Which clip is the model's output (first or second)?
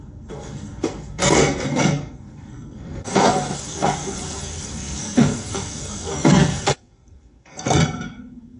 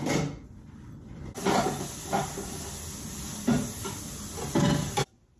first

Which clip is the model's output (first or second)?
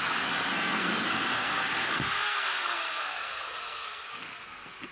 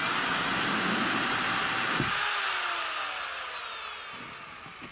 first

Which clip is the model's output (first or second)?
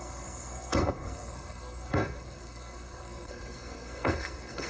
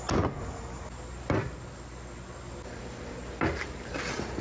first